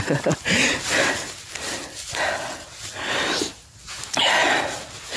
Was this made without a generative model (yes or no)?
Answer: yes